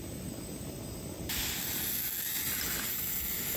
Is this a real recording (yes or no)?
yes